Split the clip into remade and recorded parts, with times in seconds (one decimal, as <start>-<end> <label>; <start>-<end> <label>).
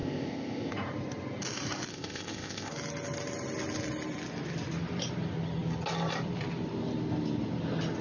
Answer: 0.0-0.7 remade; 0.7-1.9 recorded; 1.9-2.7 remade; 2.7-8.0 recorded